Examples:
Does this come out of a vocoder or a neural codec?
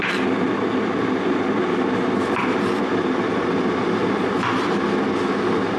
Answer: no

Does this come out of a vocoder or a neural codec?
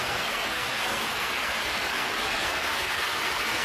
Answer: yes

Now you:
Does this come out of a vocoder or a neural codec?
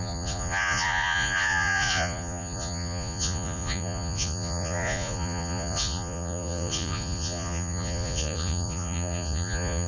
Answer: yes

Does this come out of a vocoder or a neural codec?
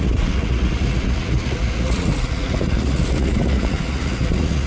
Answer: yes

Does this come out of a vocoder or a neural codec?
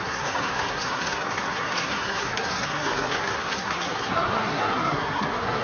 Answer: yes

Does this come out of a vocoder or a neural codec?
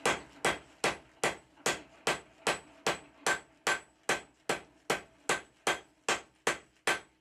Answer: no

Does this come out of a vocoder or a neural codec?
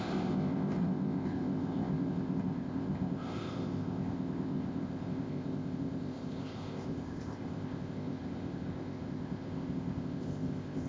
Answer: yes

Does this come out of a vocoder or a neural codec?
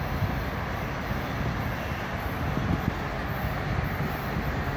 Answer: no